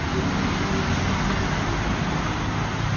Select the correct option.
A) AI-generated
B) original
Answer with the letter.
B